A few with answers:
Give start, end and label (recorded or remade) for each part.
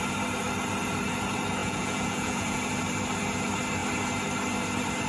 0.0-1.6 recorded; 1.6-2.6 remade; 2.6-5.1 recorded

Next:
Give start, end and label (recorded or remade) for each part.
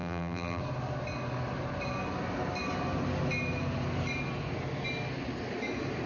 0.0-0.6 remade; 0.6-6.1 recorded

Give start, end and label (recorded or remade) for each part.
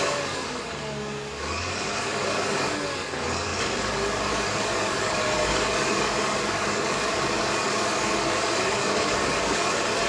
0.0-10.1 remade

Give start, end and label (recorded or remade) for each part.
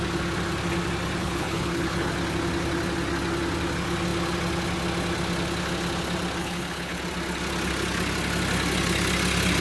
0.0-1.2 recorded; 1.2-2.1 remade; 2.1-6.4 recorded; 6.4-7.0 remade; 7.0-9.6 recorded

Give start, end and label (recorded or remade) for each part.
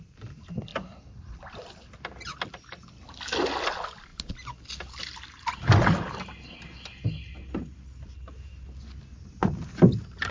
0.0-10.3 recorded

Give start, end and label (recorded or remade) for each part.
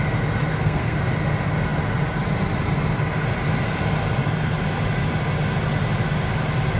0.0-0.5 recorded; 0.5-1.0 remade; 1.0-6.8 recorded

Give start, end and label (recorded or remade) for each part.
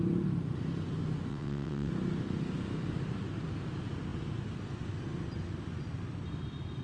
0.0-1.3 recorded; 1.3-1.9 remade; 1.9-6.8 recorded